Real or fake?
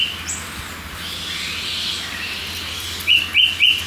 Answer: real